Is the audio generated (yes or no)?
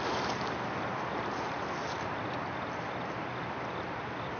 no